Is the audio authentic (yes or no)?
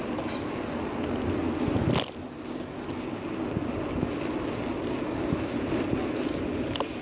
yes